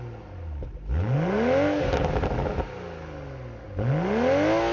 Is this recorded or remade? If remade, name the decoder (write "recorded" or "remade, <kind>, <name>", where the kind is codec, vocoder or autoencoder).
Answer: recorded